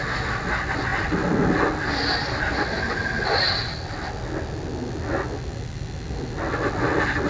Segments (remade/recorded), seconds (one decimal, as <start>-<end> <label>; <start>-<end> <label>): 0.0-7.3 recorded